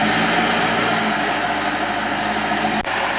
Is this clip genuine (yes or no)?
yes